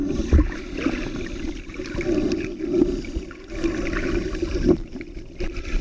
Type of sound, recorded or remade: recorded